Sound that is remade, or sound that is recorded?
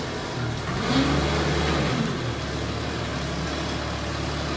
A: recorded